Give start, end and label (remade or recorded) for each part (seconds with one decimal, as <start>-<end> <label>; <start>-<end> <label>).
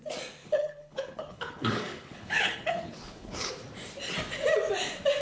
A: 0.0-0.4 recorded; 0.4-3.5 remade; 3.5-5.2 recorded